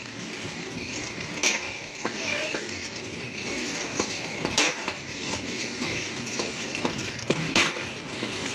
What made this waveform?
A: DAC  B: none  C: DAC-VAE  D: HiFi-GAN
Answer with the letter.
A